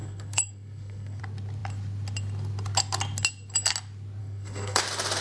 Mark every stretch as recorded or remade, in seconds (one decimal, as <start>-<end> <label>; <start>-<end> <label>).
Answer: 0.0-1.2 remade; 1.2-4.2 recorded; 4.2-4.8 remade; 4.8-5.2 recorded